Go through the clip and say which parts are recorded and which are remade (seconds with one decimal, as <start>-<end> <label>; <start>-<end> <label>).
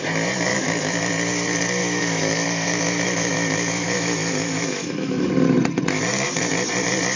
0.0-0.5 recorded; 0.5-1.1 remade; 1.1-1.8 recorded; 1.8-5.3 remade; 5.3-7.2 recorded